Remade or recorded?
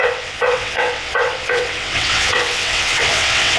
remade